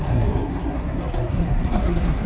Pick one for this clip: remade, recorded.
remade